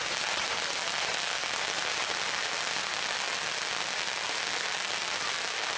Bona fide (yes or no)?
yes